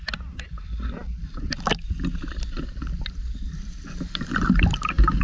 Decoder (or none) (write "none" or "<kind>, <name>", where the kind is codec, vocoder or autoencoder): none